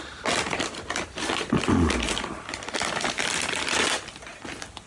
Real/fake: real